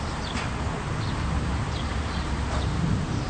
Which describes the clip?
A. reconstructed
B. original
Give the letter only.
A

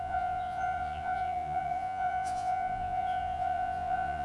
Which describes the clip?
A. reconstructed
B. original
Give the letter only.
A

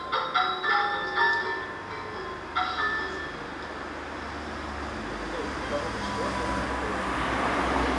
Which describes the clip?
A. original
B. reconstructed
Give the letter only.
A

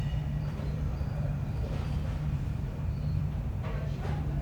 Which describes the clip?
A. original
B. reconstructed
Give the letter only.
B